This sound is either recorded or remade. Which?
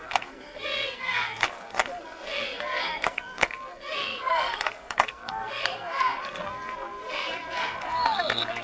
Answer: remade